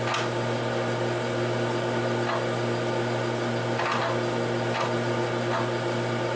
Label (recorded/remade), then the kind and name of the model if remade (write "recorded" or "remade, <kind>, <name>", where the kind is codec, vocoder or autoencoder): recorded